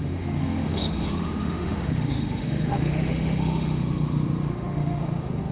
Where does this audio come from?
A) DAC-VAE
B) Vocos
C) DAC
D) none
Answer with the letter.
A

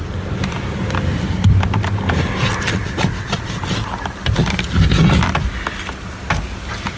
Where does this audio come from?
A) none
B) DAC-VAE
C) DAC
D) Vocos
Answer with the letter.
A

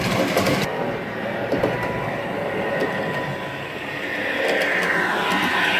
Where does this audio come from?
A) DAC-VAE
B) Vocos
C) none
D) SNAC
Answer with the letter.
C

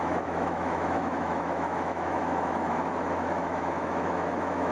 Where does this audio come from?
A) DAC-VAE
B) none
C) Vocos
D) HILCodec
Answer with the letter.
A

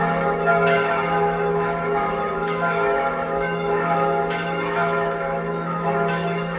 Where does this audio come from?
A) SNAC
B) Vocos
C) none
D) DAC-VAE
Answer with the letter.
D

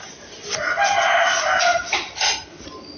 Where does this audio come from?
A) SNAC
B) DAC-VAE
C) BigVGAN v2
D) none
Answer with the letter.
D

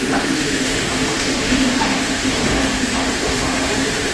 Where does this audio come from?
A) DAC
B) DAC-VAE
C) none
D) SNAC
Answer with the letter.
B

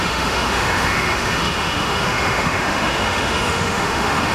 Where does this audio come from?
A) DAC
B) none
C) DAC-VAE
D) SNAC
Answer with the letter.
C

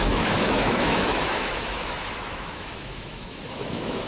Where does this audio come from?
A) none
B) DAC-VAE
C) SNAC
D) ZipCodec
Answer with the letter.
B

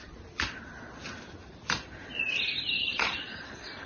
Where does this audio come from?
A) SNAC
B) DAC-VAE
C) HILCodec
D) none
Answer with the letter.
D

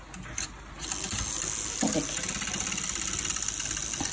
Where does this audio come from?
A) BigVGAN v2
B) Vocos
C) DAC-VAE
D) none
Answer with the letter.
D